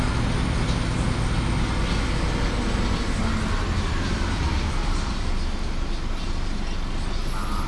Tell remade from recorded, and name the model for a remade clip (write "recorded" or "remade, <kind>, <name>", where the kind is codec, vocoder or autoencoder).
recorded